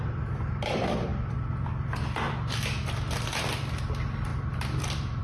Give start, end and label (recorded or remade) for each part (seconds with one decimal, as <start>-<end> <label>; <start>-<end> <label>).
0.0-1.1 remade; 1.1-3.9 recorded; 3.9-4.3 remade; 4.3-5.2 recorded